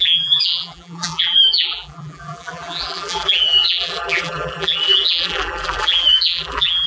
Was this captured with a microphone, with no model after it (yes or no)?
no